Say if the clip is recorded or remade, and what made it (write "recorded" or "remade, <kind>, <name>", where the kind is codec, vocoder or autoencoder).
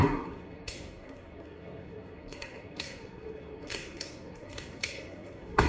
remade, codec, SNAC